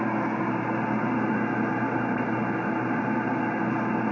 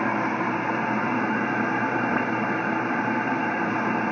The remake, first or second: second